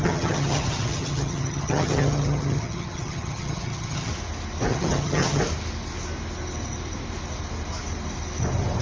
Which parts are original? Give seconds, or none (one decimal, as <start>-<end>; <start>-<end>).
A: 4.1-4.7; 5.4-8.8